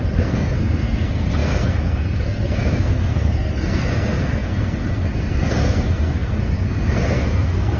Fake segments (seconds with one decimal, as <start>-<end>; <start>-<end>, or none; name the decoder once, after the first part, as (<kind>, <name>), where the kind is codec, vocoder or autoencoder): 0.0-7.8 (codec, SNAC)